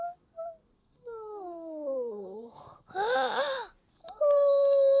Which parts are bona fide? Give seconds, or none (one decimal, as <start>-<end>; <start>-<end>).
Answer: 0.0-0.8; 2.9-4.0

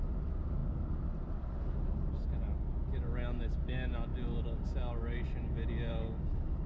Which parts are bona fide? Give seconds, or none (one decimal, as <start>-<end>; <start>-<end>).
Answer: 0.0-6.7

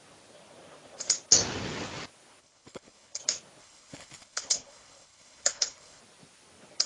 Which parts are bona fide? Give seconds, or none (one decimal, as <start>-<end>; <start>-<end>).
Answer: 0.0-2.4; 3.2-3.6; 6.0-6.9

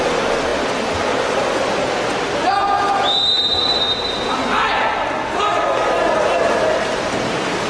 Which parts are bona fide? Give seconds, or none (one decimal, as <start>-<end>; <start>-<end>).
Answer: 0.5-5.0